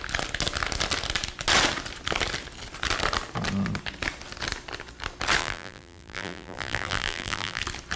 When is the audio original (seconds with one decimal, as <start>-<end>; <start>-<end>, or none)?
0.0-5.4; 7.6-8.0